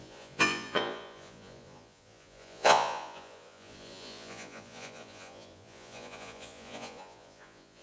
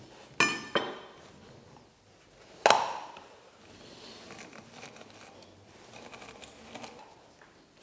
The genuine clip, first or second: second